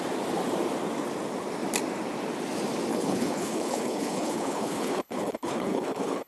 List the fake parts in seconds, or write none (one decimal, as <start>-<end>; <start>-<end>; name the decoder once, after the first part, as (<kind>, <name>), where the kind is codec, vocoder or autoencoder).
2.9-6.3 (codec, HILCodec)

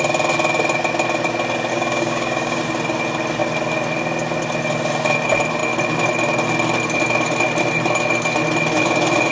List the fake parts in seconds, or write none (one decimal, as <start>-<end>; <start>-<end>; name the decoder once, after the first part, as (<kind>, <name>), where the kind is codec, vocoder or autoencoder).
1.7-2.6 (codec, DAC)

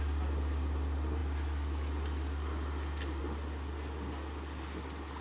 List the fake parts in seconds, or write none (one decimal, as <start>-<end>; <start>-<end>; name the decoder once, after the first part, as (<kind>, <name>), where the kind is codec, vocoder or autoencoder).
none

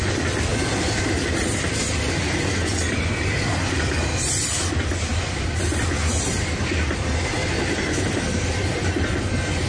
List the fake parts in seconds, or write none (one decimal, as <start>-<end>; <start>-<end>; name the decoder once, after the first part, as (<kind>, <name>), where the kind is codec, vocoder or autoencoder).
0.5-1.6 (vocoder, BigVGAN v2)

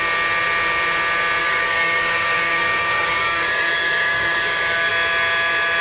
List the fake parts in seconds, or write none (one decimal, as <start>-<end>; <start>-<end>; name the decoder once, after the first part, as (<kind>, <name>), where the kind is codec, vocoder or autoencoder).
1.4-4.9 (codec, DAC)

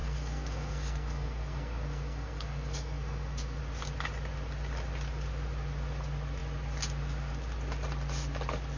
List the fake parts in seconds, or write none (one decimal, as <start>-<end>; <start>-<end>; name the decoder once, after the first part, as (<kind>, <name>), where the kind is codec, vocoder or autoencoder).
0.0-3.6 (codec, SNAC)